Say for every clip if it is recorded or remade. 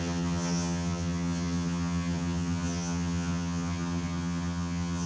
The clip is remade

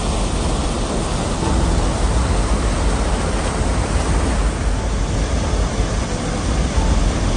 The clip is recorded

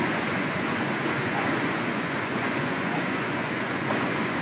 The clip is remade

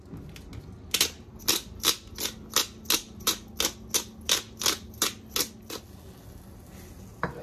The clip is recorded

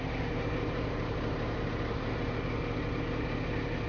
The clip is recorded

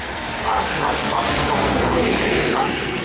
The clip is remade